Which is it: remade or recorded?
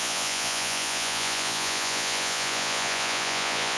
remade